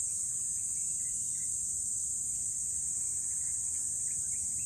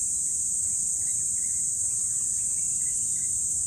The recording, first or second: first